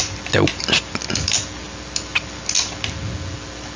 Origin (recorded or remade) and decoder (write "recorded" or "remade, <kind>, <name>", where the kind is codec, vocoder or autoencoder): recorded